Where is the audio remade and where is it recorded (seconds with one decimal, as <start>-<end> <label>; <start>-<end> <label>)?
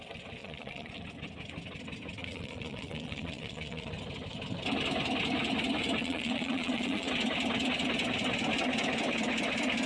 0.0-0.4 recorded; 0.4-0.9 remade; 0.9-2.2 recorded; 2.2-3.9 remade; 3.9-6.0 recorded; 6.0-7.1 remade; 7.1-9.9 recorded